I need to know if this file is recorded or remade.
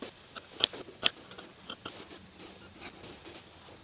recorded